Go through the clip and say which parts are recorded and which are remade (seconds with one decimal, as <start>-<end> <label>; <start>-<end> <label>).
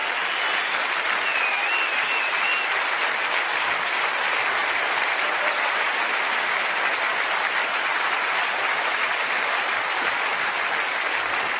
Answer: 0.0-11.6 recorded